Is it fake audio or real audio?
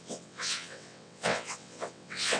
fake